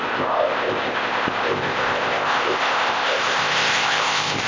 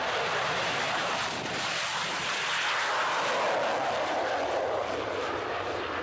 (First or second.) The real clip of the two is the second